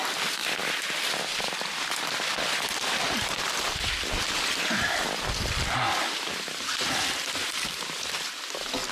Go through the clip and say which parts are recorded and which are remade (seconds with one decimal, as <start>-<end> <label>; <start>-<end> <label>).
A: 0.0-8.9 recorded